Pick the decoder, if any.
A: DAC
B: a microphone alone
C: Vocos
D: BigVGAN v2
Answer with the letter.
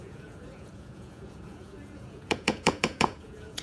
C